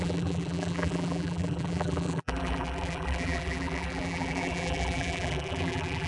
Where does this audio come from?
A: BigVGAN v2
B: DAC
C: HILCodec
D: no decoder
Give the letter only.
A